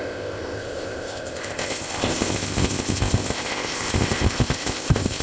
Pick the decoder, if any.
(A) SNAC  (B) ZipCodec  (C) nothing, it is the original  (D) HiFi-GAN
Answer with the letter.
B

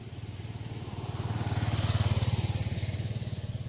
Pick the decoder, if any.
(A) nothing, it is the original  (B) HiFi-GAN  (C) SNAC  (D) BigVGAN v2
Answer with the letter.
A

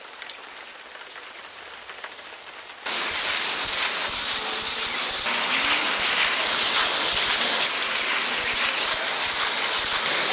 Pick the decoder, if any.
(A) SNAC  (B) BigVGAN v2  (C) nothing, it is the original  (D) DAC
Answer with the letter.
C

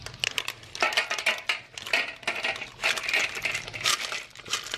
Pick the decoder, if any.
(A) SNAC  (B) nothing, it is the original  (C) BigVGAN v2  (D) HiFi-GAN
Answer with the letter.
B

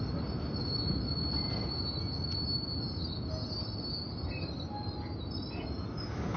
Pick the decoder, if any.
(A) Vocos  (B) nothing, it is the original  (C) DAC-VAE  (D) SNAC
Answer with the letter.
B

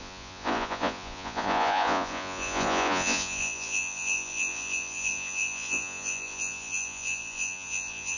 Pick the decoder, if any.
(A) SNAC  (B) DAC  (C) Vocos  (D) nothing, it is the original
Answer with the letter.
C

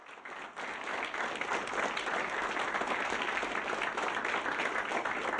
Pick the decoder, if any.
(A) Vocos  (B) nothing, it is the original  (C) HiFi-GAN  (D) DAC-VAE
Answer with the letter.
B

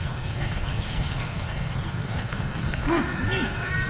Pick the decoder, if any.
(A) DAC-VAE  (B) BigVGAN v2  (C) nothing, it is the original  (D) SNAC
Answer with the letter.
D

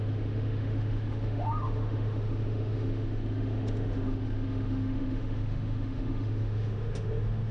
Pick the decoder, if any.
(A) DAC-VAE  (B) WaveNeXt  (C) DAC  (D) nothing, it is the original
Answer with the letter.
A